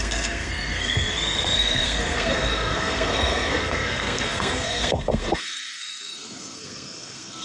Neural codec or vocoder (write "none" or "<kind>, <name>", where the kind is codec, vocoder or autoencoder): codec, SNAC